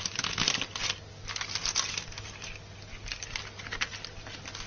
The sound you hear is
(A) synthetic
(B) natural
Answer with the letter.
B